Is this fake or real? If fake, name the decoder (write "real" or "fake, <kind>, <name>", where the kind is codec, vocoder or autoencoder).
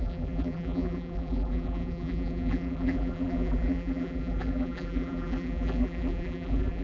fake, vocoder, BigVGAN v2